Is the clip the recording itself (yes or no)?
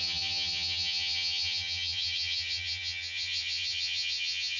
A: no